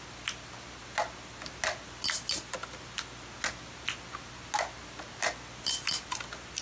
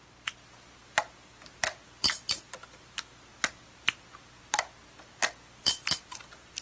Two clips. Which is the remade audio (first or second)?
second